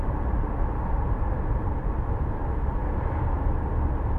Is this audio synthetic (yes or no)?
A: no